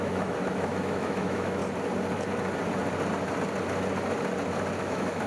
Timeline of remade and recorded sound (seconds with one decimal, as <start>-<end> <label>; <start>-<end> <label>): 0.0-1.6 remade; 1.6-4.8 recorded; 4.8-5.3 remade